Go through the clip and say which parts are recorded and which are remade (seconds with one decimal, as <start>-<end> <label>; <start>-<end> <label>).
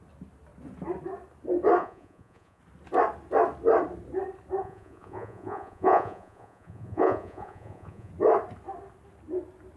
0.0-1.8 recorded; 1.8-2.6 remade; 2.6-4.6 recorded; 4.6-8.1 remade; 8.1-9.8 recorded